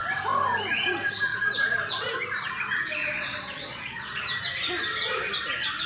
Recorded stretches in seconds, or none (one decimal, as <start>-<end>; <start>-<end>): 0.0-1.3; 1.8-3.0; 4.2-5.9